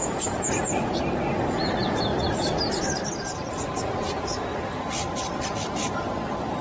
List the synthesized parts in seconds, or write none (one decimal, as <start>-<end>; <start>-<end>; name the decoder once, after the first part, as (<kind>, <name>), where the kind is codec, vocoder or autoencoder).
0.0-0.9 (vocoder, Vocos)